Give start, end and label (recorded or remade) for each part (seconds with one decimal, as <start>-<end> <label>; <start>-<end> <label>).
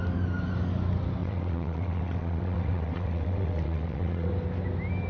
0.0-1.2 recorded; 1.2-4.3 remade; 4.3-5.1 recorded